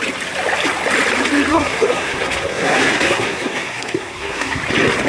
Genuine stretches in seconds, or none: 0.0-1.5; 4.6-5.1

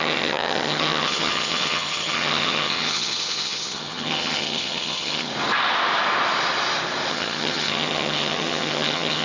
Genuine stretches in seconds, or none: 5.3-7.1

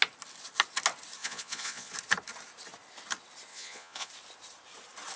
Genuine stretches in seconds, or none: 0.0-1.2; 1.9-3.5; 4.1-5.2

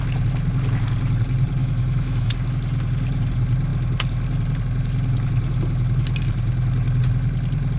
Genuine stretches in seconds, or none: 0.0-1.6; 2.3-7.8

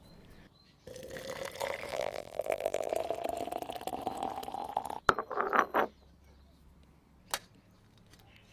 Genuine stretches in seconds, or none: 0.0-1.9; 2.9-8.5